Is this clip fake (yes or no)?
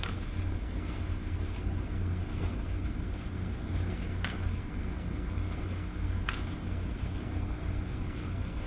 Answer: yes